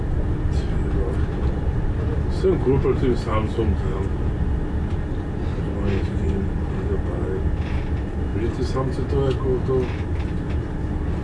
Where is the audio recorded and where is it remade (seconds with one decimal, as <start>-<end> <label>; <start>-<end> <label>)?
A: 0.0-11.2 recorded